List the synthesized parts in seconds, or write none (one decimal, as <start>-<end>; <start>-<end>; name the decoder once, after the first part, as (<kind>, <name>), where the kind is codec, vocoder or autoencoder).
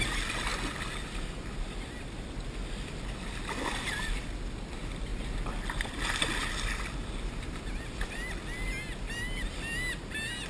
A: none